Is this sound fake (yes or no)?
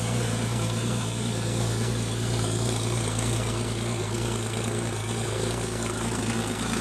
yes